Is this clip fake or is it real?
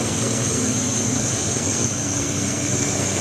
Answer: fake